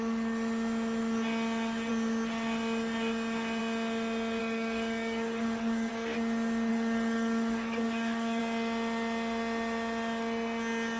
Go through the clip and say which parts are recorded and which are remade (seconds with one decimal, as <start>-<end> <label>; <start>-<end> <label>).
0.0-4.4 recorded; 4.4-5.9 remade; 5.9-6.7 recorded; 6.7-8.4 remade; 8.4-11.0 recorded

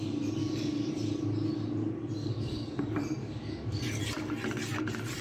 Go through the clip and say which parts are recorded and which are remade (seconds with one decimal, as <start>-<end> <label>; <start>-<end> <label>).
0.0-0.4 recorded; 0.4-0.9 remade; 0.9-2.2 recorded; 2.2-2.8 remade; 2.8-3.2 recorded; 3.2-3.8 remade; 3.8-5.2 recorded